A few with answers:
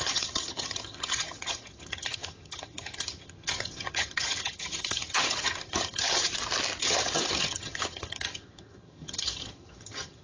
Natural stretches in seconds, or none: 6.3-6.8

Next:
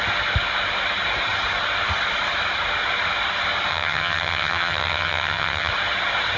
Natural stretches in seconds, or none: 0.0-3.7; 5.7-6.4

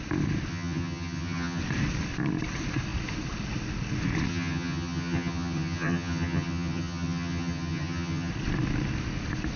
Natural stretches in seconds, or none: 0.0-0.5; 1.6-4.3; 8.3-9.6

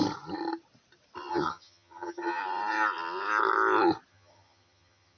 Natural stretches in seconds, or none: 0.0-1.3; 2.4-4.1

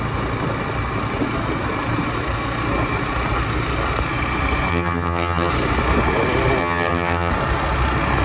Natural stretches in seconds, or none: 0.0-4.7; 5.5-6.6; 7.3-8.2

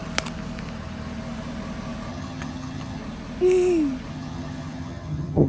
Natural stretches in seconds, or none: 0.0-2.1; 3.0-4.1

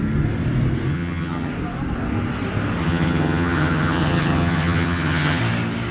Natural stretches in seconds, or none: 0.0-0.9; 1.5-2.8; 5.4-5.9

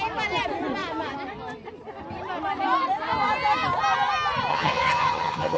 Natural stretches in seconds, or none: 0.0-4.5